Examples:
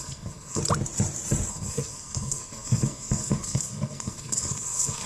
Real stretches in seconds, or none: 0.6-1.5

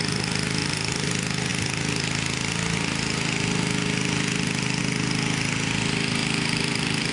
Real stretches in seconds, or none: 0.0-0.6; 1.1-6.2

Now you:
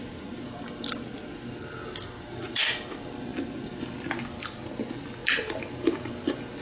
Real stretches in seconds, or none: 0.0-6.6